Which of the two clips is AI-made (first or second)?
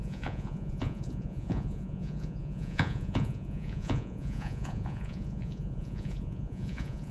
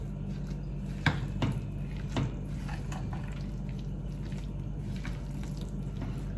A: first